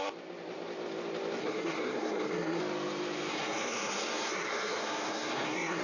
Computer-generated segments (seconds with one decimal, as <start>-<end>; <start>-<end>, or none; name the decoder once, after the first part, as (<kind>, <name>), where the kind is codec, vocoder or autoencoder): 1.4-2.6 (codec, SNAC); 3.3-5.8